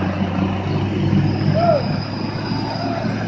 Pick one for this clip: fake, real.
real